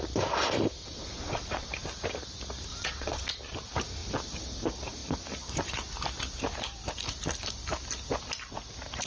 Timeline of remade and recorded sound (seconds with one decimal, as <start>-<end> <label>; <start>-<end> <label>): 0.0-0.8 recorded; 0.8-1.7 remade; 1.7-2.7 recorded; 2.7-3.3 remade; 3.3-9.1 recorded